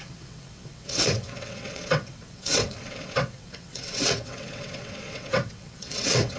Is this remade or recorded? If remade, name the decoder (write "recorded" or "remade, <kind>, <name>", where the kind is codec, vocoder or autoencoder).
remade, vocoder, WaveNeXt